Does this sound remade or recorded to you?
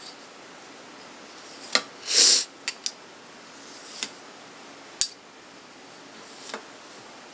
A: recorded